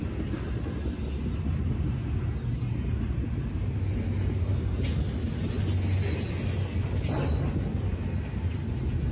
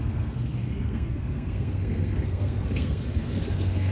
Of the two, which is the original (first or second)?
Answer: first